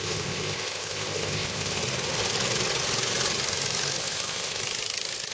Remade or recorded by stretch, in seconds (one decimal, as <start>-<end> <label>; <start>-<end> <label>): 0.0-1.8 remade; 1.8-4.0 recorded; 4.0-4.6 remade; 4.6-5.3 recorded